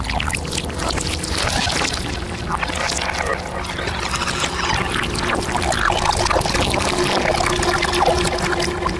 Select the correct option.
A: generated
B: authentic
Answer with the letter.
B